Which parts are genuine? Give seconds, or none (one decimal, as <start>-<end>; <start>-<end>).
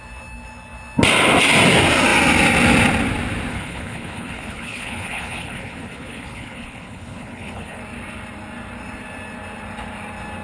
0.0-3.5; 7.8-10.4